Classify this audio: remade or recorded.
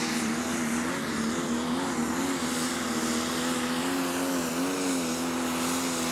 recorded